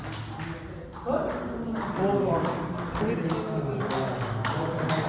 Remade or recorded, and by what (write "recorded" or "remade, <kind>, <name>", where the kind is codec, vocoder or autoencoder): recorded